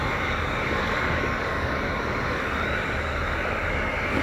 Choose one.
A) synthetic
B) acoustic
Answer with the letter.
A